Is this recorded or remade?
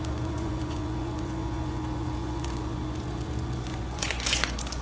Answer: remade